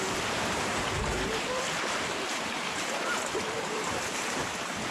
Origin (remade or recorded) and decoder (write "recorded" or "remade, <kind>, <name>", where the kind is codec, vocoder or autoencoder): remade, vocoder, BigVGAN v2